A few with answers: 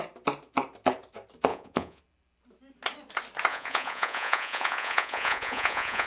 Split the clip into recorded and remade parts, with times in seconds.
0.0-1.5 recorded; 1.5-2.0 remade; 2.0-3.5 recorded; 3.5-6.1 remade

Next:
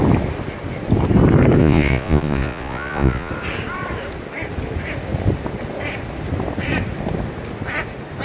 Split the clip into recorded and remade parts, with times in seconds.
0.0-1.6 recorded; 1.6-3.3 remade; 3.3-8.2 recorded